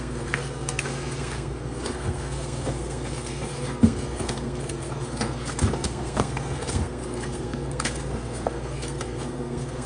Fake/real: fake